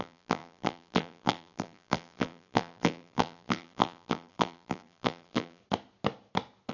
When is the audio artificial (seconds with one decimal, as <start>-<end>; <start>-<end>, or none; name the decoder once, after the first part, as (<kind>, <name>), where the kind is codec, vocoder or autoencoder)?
0.0-5.6 (vocoder, BigVGAN v2)